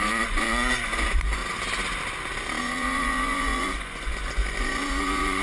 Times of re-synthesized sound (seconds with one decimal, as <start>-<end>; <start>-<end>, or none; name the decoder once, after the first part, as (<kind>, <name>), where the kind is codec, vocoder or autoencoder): 0.0-1.4 (vocoder, Vocos); 2.6-5.4